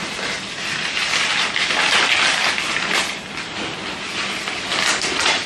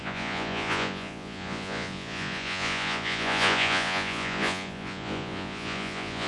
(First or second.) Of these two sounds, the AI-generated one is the second